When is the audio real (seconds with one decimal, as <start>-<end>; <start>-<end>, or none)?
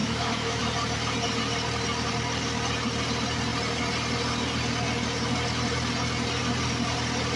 0.6-7.4